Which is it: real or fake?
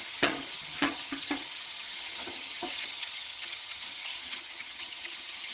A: fake